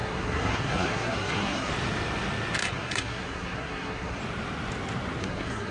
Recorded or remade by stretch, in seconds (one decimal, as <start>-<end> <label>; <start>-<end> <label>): 0.0-1.7 remade; 1.7-2.6 recorded; 2.6-4.2 remade; 4.2-5.2 recorded; 5.2-5.7 remade